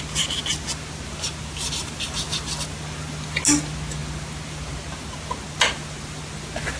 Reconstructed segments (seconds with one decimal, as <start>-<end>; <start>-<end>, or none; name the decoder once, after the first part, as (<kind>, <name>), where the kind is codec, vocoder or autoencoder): none